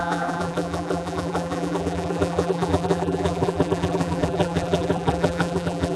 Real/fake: fake